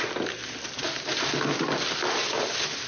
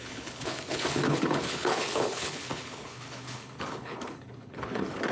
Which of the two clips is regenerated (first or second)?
second